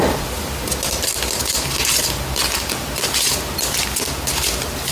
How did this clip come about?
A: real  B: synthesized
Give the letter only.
A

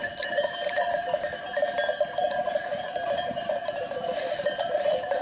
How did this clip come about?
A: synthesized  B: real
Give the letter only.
A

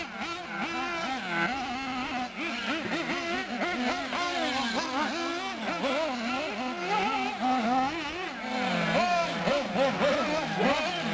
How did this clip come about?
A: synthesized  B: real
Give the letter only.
B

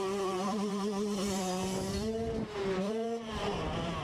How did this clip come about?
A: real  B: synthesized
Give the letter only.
B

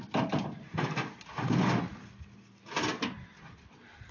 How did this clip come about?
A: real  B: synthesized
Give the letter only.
B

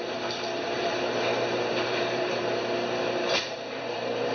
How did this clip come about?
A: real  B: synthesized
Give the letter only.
B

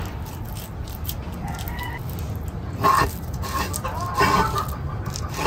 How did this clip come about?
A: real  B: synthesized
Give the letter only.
A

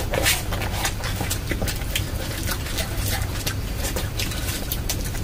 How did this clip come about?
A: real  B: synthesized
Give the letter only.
A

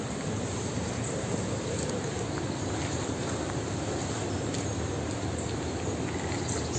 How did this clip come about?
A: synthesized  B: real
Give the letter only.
A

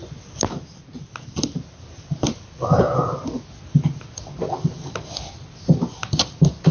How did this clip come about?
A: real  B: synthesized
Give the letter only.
A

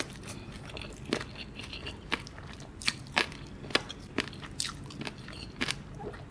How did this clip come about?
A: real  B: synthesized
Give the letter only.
A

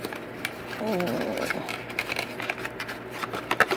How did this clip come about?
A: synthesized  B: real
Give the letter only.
B